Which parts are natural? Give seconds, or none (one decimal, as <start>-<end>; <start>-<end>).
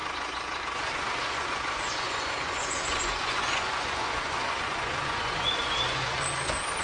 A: none